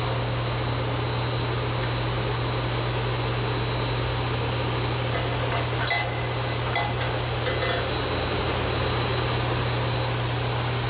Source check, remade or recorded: recorded